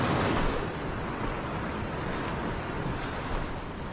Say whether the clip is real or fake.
real